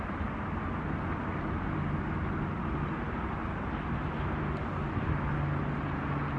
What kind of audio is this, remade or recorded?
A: recorded